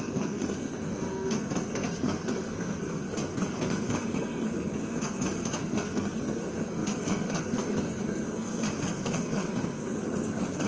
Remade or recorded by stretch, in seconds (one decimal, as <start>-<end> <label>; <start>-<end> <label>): 0.0-10.7 remade